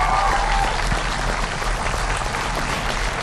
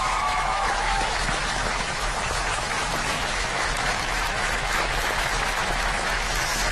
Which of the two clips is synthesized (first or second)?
second